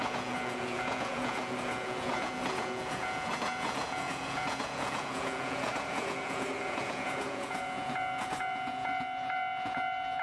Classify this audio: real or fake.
fake